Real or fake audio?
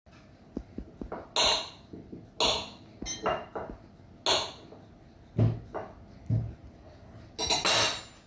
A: real